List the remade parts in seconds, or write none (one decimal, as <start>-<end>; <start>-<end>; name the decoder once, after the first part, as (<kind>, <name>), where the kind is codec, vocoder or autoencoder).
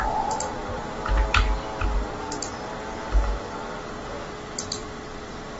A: 4.8-5.6 (vocoder, BigVGAN v2)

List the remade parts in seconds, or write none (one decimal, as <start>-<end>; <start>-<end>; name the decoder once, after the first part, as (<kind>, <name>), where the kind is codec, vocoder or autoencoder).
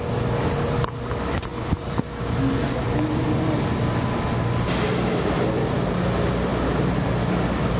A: none